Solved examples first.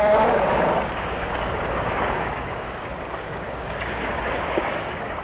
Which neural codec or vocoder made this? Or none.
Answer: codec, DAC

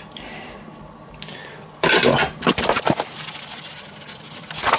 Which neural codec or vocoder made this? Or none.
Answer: none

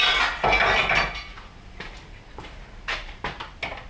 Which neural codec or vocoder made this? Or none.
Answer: none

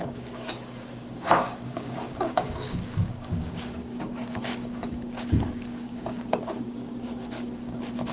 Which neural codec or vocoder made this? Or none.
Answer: codec, DAC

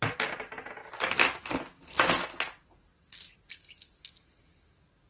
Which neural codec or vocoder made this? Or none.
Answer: none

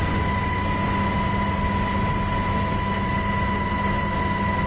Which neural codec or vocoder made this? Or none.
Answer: none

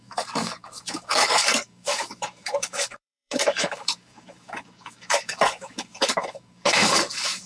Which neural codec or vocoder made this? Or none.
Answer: codec, DAC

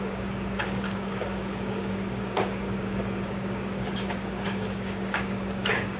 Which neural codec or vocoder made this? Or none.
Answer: codec, DAC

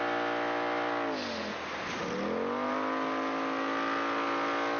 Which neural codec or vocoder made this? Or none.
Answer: none